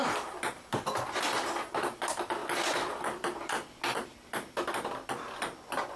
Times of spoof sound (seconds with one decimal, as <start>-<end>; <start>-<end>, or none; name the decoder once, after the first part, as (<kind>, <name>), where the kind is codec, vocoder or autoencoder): none